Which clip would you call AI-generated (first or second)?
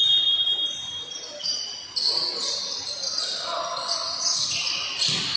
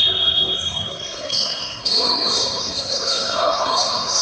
second